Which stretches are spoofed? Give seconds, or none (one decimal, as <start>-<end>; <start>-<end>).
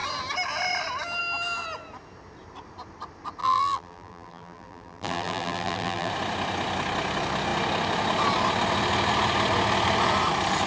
3.4-6.1